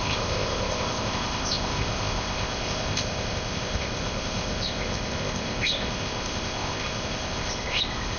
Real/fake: fake